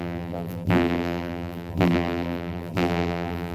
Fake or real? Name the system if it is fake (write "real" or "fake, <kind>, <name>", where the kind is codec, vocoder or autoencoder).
fake, vocoder, BigVGAN v2